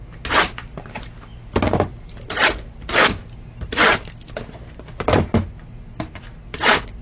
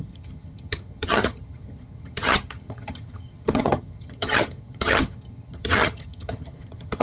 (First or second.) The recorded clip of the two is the first